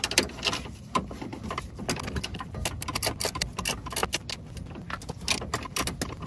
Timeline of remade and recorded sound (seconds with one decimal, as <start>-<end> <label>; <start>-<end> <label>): 0.0-6.3 recorded